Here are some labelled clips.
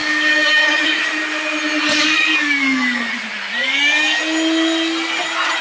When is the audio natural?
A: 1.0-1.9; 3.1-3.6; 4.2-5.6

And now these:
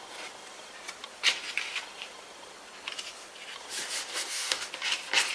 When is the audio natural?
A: 0.0-4.1; 4.7-5.3

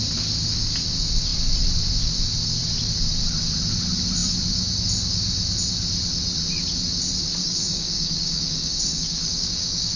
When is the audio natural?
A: 0.0-7.4

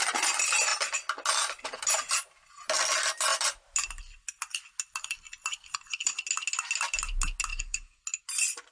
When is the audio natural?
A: 0.0-7.5; 8.0-8.7

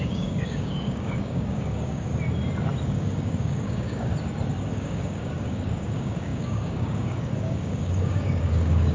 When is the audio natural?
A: 2.1-2.8; 4.1-4.7

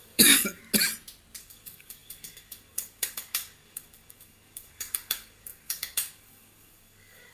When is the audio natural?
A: 0.6-1.4